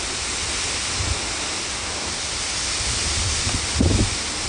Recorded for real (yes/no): yes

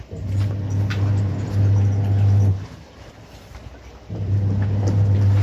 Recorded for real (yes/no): yes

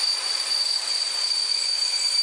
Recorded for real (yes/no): yes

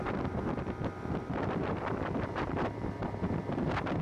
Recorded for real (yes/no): no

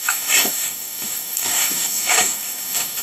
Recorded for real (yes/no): no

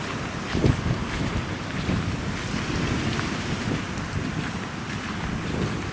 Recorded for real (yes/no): yes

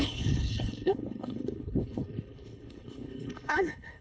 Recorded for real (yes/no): no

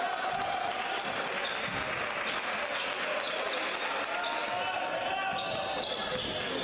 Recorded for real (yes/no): yes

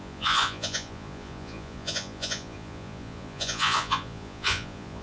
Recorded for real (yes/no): no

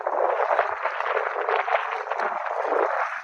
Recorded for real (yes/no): no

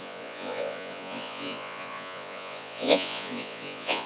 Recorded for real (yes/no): no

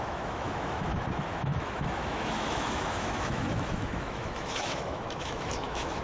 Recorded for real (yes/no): no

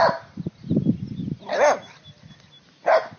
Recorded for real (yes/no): yes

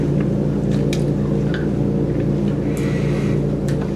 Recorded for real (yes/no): yes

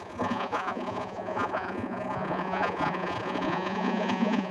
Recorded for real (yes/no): no